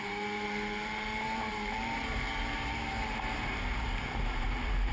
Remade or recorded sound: remade